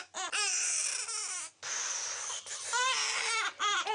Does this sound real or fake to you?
real